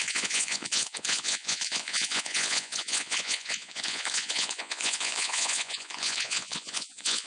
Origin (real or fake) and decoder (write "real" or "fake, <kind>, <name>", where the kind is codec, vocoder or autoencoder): fake, vocoder, Vocos